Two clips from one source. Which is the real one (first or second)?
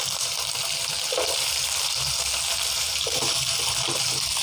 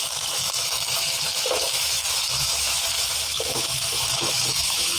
first